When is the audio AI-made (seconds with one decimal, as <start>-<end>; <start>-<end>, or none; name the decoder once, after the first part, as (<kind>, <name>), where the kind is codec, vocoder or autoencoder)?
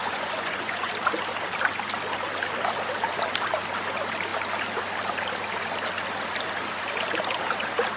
0.0-0.9 (vocoder, Vocos)